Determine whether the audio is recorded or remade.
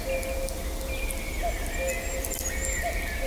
recorded